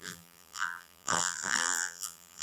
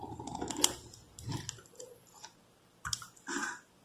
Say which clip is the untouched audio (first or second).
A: second